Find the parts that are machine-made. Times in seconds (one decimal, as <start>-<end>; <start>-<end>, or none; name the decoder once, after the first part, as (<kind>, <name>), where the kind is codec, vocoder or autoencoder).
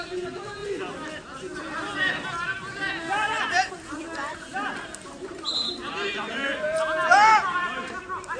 none